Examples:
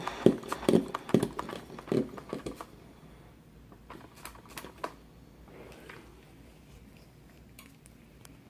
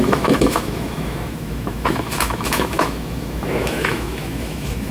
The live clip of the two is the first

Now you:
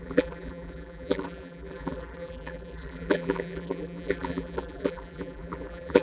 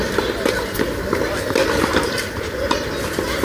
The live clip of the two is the second